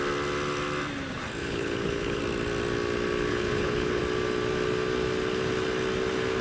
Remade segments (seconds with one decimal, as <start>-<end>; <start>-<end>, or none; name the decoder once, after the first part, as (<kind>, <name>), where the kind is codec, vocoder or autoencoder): 1.4-2.2 (codec, HILCodec); 3.3-4.0